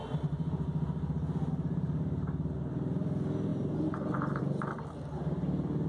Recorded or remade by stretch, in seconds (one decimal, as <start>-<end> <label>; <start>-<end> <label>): 0.0-3.5 recorded; 3.5-4.4 remade; 4.4-5.9 recorded